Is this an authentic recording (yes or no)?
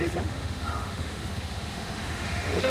no